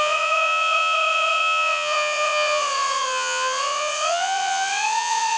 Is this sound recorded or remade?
remade